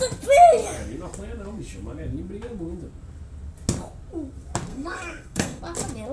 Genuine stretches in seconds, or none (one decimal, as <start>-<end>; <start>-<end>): 0.0-4.7; 5.6-6.1